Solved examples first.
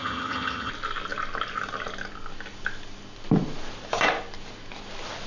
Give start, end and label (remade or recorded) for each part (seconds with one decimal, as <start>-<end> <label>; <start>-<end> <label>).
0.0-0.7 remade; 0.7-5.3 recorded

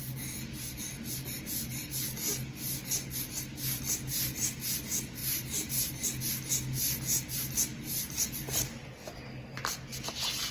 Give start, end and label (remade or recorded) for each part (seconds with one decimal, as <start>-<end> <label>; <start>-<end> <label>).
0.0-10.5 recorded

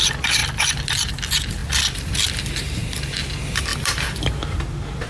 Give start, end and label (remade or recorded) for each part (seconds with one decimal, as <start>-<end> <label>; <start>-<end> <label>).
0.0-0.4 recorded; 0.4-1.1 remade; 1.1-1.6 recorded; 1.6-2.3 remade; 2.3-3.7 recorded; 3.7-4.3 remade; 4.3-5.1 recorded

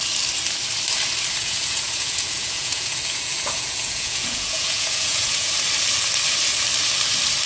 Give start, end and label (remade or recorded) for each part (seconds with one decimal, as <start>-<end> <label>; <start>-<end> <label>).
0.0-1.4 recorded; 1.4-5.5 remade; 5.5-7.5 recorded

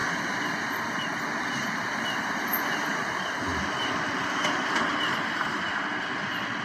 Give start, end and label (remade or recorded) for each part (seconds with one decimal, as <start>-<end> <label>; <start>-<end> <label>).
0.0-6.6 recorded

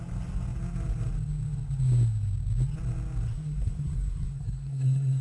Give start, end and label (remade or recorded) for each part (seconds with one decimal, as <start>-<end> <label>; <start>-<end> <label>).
0.0-3.3 recorded; 3.3-5.2 remade